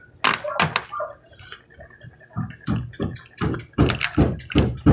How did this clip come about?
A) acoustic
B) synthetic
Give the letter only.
A